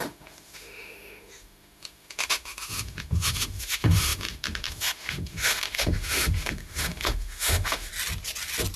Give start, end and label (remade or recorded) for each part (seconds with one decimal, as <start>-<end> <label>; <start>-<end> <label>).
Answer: 0.0-7.9 remade; 7.9-8.8 recorded